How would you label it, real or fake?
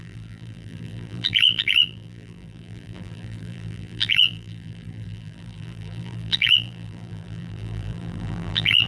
fake